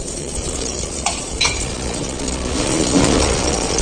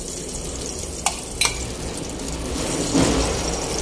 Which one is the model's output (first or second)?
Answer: first